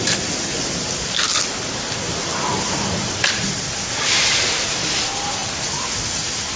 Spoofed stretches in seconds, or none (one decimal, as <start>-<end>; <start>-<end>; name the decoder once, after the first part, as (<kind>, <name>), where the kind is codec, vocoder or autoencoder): none